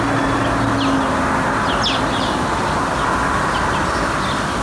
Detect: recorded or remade recorded